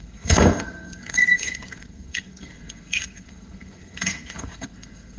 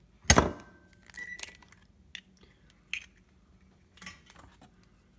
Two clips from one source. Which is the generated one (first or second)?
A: first